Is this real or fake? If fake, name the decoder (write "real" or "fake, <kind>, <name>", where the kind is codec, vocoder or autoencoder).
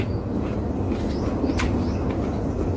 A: real